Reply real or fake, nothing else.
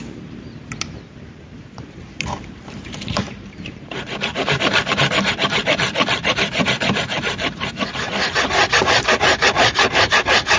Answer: fake